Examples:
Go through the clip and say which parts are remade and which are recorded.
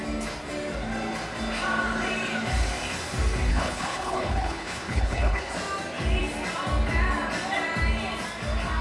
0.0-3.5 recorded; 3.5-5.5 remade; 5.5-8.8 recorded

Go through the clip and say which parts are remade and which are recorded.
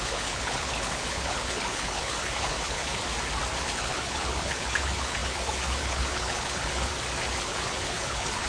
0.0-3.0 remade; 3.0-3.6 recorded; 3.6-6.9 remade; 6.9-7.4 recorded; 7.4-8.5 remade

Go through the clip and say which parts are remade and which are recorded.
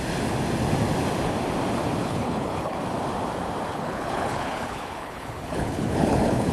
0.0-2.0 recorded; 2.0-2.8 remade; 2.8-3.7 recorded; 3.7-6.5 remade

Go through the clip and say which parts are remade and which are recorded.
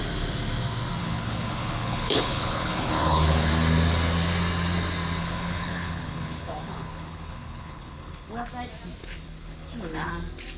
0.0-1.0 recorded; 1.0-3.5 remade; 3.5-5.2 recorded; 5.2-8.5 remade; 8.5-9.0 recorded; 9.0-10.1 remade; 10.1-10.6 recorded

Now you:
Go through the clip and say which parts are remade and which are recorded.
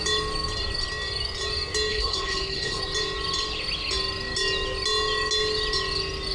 0.0-1.9 recorded; 1.9-2.8 remade; 2.8-6.3 recorded